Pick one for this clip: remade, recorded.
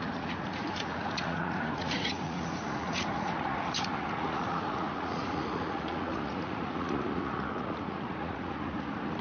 remade